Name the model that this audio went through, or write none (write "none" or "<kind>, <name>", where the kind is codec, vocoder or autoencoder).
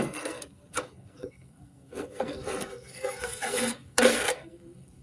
codec, SNAC